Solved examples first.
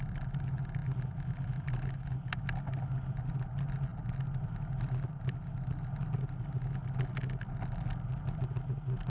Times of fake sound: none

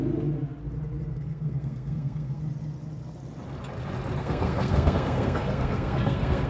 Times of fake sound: 1.1-2.4 (codec, SNAC); 4.2-6.5

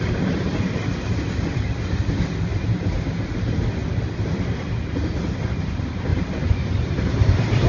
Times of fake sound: 0.0-0.5 (vocoder, BigVGAN v2); 1.1-2.5; 3.4-6.1; 7.3-7.7

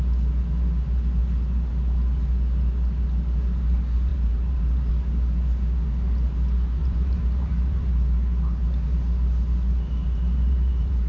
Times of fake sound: 4.1-4.9 (vocoder, BigVGAN v2); 6.8-7.9; 10.0-11.1

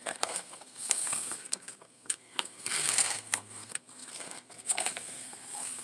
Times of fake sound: 0.0-5.8 (codec, SNAC)

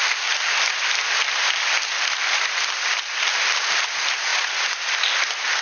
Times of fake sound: none